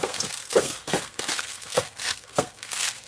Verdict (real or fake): fake